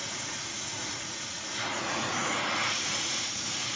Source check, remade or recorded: remade